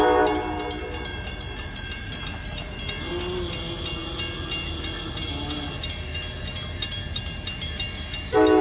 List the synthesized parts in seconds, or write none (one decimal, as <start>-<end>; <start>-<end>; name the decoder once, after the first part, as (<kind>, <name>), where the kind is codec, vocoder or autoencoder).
0.8-2.7 (vocoder, BigVGAN v2)